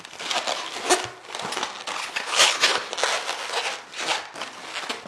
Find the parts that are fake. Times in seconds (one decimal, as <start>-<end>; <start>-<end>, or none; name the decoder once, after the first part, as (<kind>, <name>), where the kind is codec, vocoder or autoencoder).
2.0-2.9 (codec, HILCodec)